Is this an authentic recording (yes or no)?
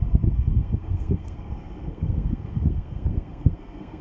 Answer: no